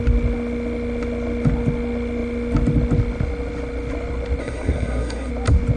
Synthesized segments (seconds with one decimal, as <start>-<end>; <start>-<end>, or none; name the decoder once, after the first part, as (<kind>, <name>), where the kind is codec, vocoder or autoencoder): 4.4-5.3 (codec, SNAC)